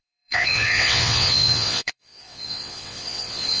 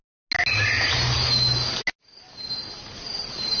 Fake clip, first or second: first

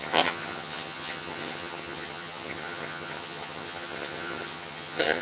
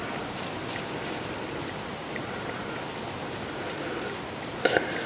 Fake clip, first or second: first